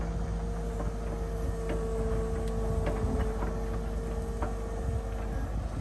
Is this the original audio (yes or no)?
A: yes